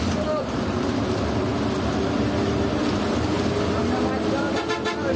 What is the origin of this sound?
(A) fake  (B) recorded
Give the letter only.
B